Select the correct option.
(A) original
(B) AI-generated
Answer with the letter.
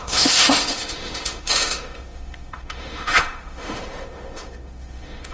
B